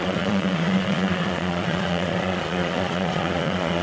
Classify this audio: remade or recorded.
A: remade